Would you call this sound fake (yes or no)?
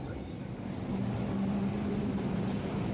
no